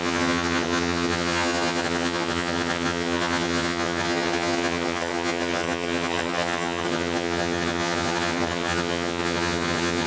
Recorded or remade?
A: remade